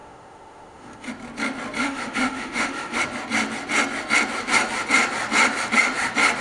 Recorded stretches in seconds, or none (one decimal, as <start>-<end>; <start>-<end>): 1.1-1.8; 3.0-6.4